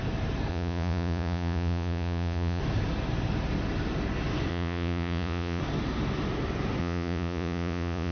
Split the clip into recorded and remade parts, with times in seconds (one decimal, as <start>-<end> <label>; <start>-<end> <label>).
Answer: 0.0-0.5 recorded; 0.5-2.6 remade; 2.6-4.5 recorded; 4.5-5.6 remade; 5.6-6.8 recorded; 6.8-8.1 remade